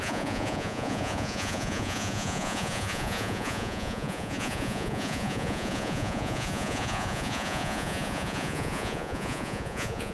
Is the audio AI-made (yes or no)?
yes